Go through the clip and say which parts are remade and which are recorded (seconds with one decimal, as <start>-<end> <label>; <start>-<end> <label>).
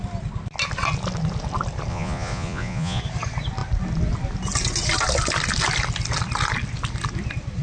0.0-1.9 recorded; 1.9-3.0 remade; 3.0-7.6 recorded